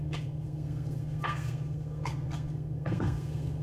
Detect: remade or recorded remade